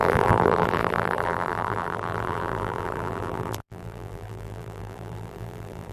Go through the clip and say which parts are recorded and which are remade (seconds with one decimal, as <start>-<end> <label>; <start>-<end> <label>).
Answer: 0.0-5.9 remade